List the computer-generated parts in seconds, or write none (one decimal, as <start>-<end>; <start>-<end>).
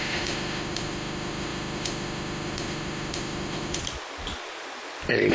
0.0-3.8